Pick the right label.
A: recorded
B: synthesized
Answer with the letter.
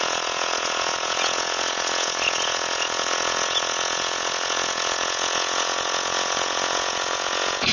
B